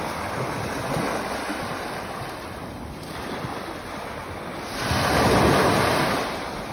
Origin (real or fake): real